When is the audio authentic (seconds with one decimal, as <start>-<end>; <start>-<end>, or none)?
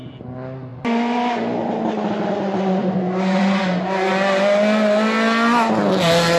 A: 0.0-0.7; 1.3-2.8; 4.1-6.4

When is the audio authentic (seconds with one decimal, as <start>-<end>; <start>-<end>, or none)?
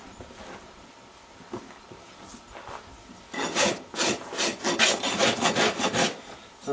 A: 0.0-6.7